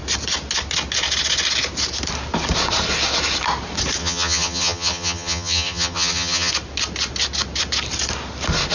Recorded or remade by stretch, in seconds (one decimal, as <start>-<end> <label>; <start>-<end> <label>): 0.0-4.0 recorded; 4.0-6.5 remade; 6.5-8.7 recorded